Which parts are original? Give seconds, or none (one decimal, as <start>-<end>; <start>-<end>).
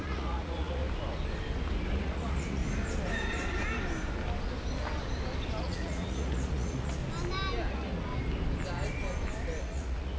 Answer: 0.8-2.0; 2.6-5.6; 7.0-7.7; 8.1-9.6